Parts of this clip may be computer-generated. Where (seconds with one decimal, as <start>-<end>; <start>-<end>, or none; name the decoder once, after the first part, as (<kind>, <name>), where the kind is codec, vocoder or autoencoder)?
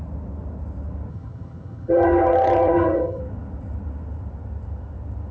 1.1-3.2 (vocoder, HiFi-GAN)